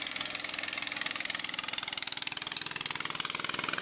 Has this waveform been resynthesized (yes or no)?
no